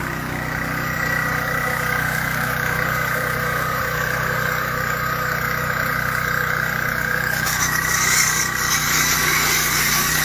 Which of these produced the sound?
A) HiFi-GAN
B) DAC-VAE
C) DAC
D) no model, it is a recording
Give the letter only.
C